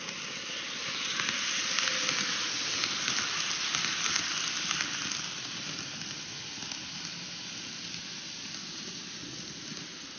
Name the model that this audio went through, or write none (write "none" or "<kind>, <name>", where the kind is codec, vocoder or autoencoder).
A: none